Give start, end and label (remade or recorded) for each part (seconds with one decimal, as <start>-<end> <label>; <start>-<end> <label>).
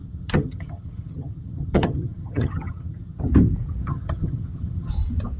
0.0-3.2 remade; 3.2-3.8 recorded; 3.8-4.9 remade; 4.9-5.4 recorded